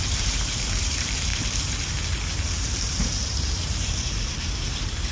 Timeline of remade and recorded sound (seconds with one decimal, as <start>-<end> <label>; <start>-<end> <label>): 0.0-1.3 remade; 1.3-2.8 recorded; 2.8-5.1 remade